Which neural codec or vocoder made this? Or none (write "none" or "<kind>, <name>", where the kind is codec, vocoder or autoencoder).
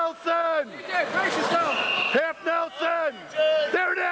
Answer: none